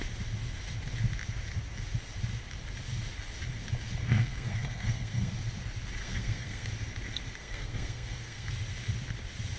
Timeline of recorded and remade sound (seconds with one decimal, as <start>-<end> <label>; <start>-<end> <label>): 0.0-4.0 recorded; 4.0-5.3 remade; 5.3-6.0 recorded; 6.0-6.7 remade; 6.7-7.4 recorded; 7.4-8.5 remade; 8.5-9.6 recorded